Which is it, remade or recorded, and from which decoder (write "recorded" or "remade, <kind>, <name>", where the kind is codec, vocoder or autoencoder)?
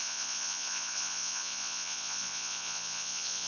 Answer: remade, vocoder, Vocos